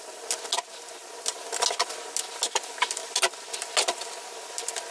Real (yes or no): yes